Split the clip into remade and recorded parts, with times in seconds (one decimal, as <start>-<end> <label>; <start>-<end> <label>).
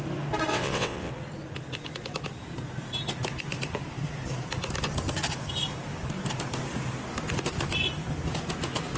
0.0-0.5 recorded; 0.5-1.1 remade; 1.1-9.0 recorded